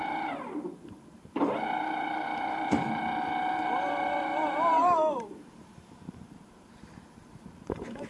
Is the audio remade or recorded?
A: remade